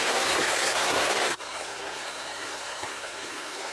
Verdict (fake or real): fake